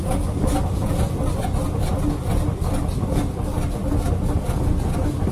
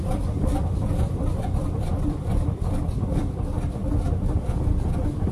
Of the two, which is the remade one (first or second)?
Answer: second